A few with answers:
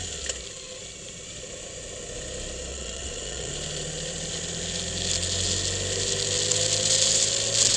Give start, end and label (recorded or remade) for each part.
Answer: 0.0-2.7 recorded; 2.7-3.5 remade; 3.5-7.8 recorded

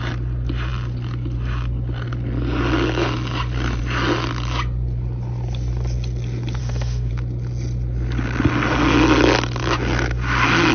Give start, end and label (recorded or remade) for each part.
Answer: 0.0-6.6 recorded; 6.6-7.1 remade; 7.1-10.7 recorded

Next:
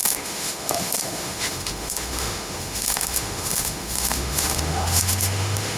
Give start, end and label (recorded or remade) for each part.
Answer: 0.0-5.8 remade

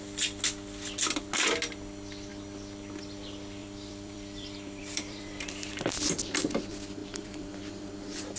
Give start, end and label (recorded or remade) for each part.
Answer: 0.0-3.6 recorded; 3.6-5.7 remade; 5.7-7.0 recorded; 7.0-7.6 remade; 7.6-8.4 recorded